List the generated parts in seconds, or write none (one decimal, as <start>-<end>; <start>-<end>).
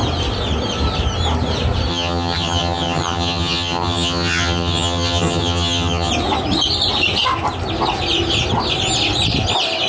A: 1.9-6.1